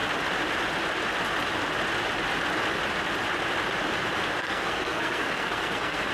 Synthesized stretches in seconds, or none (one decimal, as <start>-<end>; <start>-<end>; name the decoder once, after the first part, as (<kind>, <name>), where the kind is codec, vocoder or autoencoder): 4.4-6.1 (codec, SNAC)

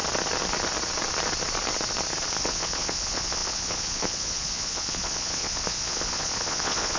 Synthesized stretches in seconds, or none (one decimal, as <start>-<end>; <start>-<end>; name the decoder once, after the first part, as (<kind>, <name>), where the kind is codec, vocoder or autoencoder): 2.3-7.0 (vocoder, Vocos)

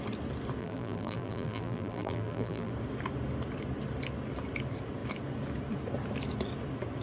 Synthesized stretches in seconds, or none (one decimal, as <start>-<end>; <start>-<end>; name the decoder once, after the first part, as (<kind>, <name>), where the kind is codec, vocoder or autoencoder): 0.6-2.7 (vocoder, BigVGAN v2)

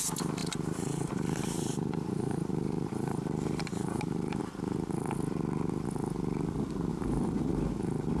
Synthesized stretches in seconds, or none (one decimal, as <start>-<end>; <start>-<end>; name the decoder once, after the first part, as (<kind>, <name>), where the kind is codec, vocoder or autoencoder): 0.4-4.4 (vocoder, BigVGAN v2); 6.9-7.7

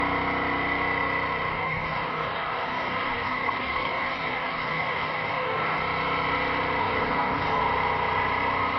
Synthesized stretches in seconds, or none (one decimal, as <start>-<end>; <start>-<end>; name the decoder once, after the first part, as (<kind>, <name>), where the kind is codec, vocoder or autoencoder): 1.5-5.8 (codec, DAC); 6.8-7.6